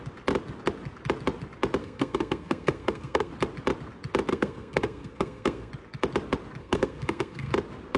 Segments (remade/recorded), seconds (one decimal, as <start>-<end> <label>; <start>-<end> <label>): 0.0-1.8 recorded; 1.8-3.3 remade; 3.3-4.3 recorded; 4.3-5.7 remade; 5.7-6.6 recorded; 6.6-7.5 remade; 7.5-8.0 recorded